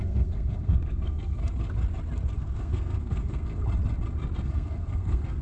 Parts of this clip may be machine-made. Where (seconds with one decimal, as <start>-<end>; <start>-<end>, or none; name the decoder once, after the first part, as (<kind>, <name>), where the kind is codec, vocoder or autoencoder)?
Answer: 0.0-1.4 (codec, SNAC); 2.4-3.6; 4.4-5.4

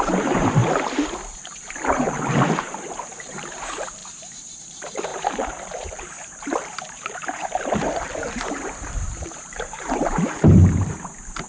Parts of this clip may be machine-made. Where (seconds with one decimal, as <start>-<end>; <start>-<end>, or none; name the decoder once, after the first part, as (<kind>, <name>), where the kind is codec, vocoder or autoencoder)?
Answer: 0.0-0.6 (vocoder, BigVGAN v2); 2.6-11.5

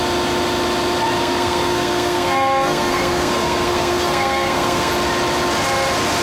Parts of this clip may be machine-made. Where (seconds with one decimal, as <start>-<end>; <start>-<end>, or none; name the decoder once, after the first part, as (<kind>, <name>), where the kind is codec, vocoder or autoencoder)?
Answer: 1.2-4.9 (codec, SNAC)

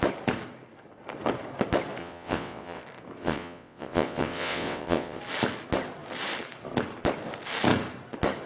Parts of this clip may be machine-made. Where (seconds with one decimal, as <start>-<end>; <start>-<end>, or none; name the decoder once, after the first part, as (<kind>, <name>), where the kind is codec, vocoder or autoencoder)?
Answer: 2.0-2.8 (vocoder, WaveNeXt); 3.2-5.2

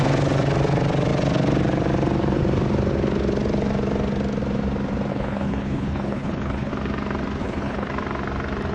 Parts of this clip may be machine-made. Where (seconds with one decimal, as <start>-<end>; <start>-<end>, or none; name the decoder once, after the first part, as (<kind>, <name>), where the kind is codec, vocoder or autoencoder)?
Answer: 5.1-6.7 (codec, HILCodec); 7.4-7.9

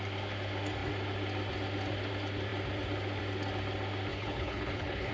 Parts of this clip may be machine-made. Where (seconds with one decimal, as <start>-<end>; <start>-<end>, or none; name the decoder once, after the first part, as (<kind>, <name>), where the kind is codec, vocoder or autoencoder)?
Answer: 4.1-5.1 (codec, HILCodec)

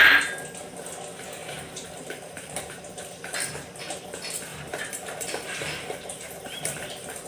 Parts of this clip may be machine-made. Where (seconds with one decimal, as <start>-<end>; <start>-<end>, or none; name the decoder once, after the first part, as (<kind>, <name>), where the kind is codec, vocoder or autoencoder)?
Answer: 1.4-3.0 (vocoder, BigVGAN v2); 4.5-7.3

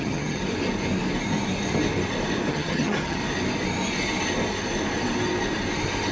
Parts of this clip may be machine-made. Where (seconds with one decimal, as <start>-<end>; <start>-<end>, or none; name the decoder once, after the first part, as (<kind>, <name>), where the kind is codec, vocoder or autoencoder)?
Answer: 0.0-0.4 (vocoder, HiFi-GAN); 2.5-3.2